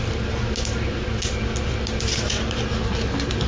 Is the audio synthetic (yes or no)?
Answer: no